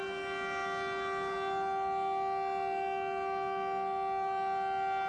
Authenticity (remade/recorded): recorded